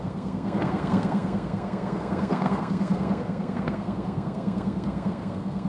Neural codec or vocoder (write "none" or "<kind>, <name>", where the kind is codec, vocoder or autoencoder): codec, SNAC